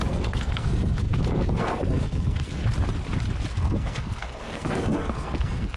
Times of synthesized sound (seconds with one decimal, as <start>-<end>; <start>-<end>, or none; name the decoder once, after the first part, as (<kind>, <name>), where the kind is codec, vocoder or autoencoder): 0.0-2.6 (codec, SNAC); 3.5-5.8